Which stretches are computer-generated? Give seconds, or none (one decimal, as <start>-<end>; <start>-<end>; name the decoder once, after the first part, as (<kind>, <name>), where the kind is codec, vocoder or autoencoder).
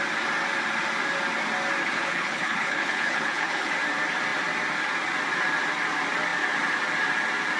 1.8-3.7 (codec, HILCodec)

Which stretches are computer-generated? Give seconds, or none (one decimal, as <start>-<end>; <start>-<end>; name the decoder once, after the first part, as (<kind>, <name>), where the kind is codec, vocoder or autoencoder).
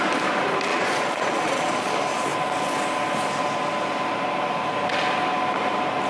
0.7-1.9 (vocoder, Vocos)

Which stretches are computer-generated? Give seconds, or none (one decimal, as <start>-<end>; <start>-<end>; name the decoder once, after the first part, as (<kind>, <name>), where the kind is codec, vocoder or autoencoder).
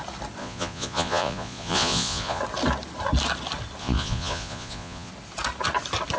0.4-2.4 (vocoder, Vocos); 3.8-5.1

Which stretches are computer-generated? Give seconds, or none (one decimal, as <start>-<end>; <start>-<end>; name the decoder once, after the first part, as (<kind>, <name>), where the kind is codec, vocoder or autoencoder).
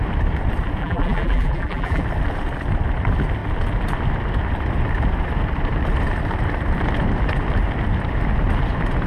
0.8-2.0 (vocoder, BigVGAN v2)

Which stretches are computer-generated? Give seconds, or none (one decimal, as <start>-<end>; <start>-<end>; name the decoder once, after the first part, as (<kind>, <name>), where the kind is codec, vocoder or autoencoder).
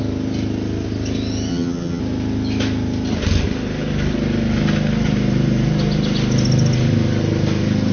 1.5-2.0 (vocoder, HiFi-GAN)